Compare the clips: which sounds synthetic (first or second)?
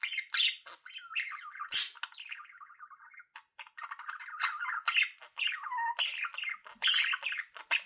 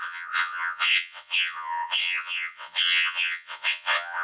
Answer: second